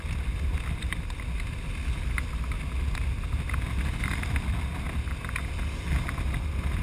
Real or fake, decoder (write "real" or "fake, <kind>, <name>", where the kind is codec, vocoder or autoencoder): real